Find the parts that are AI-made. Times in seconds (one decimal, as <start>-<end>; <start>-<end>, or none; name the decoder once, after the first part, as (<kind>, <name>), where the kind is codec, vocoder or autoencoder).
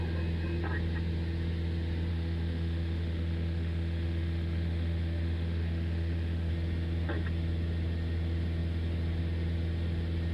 2.1-6.5 (autoencoder, DAC-VAE)